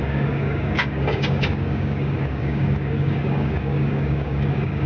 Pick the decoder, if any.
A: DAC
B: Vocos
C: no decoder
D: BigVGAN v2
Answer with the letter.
A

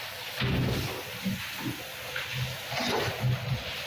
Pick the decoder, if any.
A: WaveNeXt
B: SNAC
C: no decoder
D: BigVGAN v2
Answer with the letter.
C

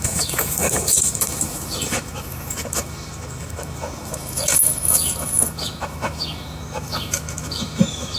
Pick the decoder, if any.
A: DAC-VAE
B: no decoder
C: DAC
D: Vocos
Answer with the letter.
A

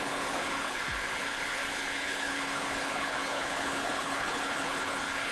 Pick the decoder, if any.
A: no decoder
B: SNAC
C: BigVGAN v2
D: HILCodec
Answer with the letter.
D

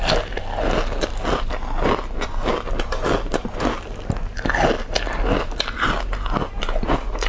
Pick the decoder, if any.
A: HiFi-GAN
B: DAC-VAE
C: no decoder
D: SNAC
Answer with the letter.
C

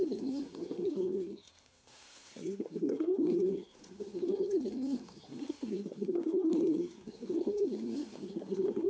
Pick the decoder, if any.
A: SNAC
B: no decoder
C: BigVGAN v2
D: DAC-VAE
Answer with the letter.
A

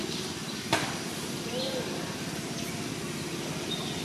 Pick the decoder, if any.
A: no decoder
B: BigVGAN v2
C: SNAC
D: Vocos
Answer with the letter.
A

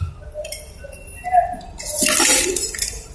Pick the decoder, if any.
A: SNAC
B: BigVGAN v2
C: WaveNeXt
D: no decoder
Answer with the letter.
D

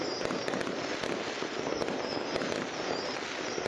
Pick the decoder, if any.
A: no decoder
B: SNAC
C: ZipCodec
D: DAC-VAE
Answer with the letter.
A